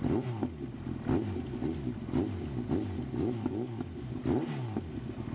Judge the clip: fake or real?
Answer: real